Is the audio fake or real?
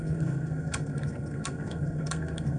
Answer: fake